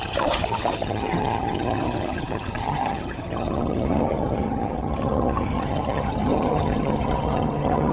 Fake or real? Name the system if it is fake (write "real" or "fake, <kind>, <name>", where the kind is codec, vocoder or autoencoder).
fake, vocoder, HiFi-GAN